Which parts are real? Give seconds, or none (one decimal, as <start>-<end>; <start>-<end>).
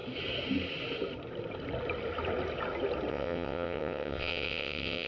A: 0.0-3.1